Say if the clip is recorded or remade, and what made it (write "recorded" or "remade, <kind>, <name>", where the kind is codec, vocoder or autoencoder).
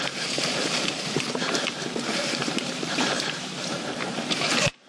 remade, vocoder, BigVGAN v2